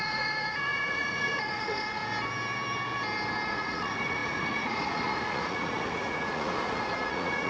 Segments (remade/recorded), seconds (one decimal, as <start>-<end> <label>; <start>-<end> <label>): 0.0-2.0 remade; 2.0-3.5 recorded; 3.5-7.5 remade